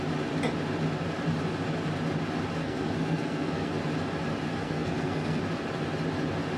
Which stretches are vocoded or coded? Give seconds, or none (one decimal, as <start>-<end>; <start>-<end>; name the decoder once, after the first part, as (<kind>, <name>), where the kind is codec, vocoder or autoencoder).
2.6-3.7 (codec, SNAC); 4.5-5.4